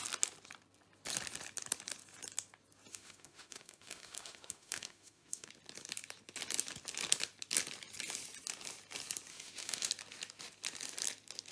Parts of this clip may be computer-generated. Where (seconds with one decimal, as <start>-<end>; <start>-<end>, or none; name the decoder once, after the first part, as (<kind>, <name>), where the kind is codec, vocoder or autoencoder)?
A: 2.9-5.5 (autoencoder, DAC-VAE); 9.3-9.9